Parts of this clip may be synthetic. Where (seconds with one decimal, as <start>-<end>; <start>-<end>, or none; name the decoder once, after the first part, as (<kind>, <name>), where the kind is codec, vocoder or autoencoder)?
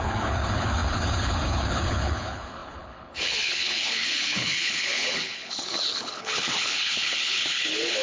0.0-8.0 (codec, HILCodec)